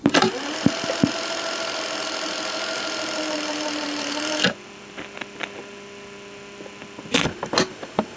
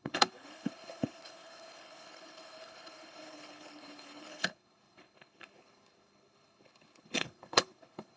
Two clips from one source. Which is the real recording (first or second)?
first